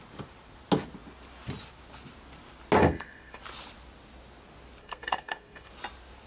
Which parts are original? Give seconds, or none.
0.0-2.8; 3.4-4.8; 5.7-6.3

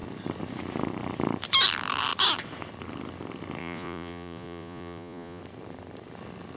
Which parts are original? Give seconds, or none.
0.0-3.6; 5.4-6.6

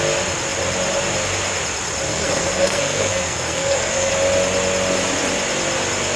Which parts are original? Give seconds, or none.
0.0-2.1; 4.1-6.2

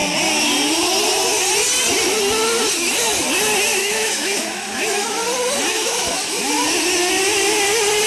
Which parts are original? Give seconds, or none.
0.0-3.8; 5.2-5.7; 6.4-8.1

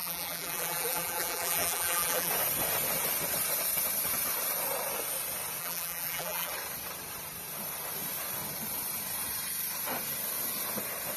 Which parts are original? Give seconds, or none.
2.3-5.6; 6.5-11.2

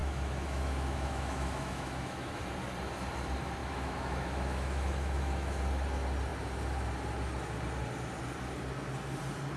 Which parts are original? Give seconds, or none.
2.4-3.6; 5.6-9.6

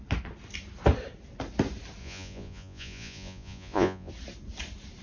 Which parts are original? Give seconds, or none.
0.0-2.0; 4.1-5.0